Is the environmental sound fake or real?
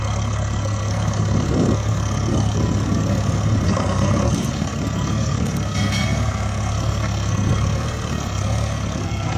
fake